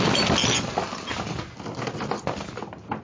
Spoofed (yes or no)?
no